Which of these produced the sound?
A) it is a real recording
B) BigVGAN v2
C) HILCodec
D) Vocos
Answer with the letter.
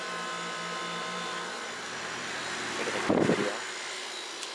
B